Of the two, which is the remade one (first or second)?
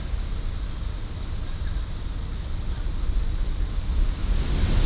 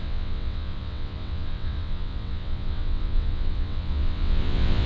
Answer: second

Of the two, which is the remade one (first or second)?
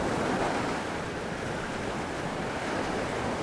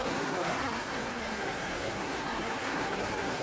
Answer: second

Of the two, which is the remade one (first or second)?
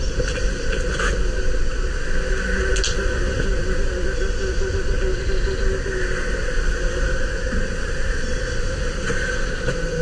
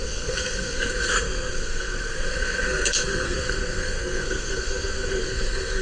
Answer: second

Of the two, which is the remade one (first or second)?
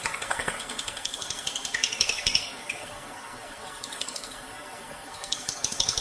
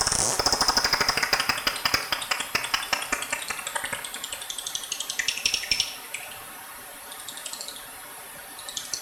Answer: first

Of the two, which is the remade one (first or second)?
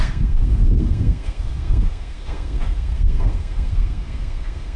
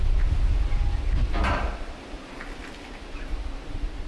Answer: first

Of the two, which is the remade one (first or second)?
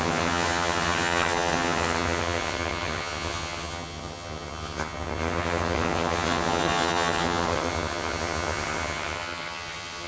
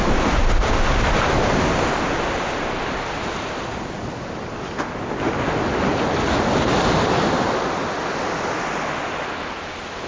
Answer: first